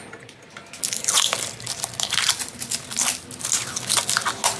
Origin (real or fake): real